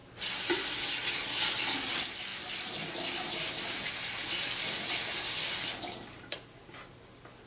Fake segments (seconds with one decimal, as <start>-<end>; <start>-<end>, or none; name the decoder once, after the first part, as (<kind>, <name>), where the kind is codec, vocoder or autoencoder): none